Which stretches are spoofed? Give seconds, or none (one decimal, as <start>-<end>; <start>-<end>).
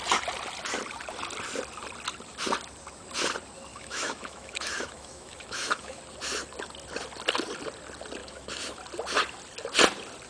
3.7-6.0; 8.2-8.8